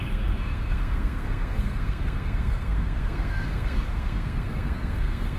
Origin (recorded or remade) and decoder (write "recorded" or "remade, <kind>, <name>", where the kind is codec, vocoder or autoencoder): remade, codec, SNAC